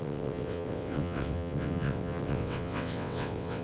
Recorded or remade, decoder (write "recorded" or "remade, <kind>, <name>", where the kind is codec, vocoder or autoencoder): remade, vocoder, WaveNeXt